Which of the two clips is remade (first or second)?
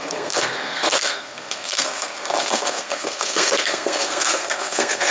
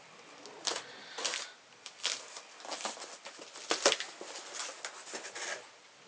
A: first